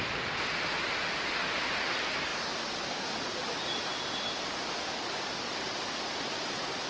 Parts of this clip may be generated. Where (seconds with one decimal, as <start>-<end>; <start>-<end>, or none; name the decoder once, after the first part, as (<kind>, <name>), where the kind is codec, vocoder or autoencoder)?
none